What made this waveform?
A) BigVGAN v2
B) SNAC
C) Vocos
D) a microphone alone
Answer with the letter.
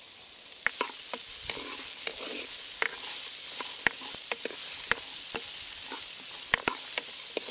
D